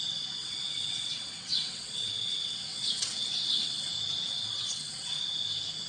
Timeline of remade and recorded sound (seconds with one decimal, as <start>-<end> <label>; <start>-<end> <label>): 0.0-0.4 recorded; 0.4-3.9 remade; 3.9-4.3 recorded; 4.3-5.2 remade; 5.2-5.9 recorded